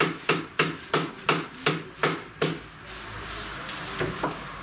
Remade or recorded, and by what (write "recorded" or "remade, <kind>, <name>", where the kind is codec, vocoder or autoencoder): recorded